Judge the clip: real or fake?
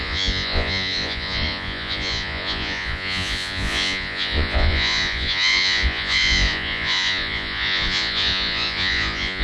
fake